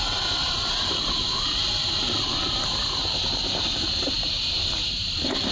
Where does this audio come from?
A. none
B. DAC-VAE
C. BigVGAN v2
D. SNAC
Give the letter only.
C